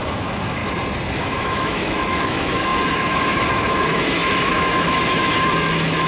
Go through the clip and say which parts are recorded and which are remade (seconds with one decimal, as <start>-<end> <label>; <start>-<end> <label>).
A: 0.0-0.6 remade; 0.6-1.2 recorded; 1.2-6.1 remade